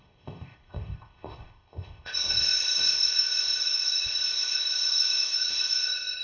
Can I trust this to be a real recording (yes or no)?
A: no